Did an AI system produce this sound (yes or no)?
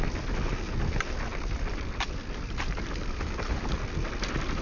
no